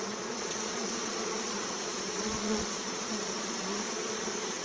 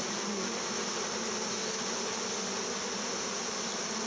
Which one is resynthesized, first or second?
first